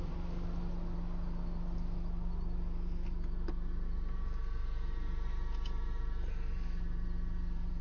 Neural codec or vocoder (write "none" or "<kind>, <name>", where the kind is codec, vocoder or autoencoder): none